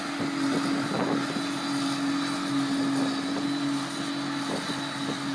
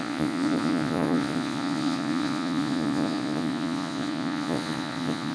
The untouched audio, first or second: first